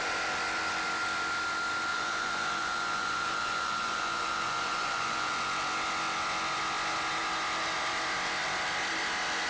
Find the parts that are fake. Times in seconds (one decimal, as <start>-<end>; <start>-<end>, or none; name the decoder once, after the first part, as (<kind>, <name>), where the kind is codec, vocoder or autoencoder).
1.9-5.3 (vocoder, Vocos)